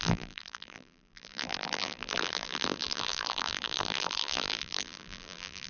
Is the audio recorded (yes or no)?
no